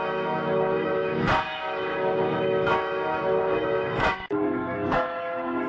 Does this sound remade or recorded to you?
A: remade